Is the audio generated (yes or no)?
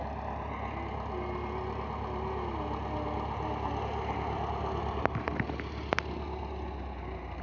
no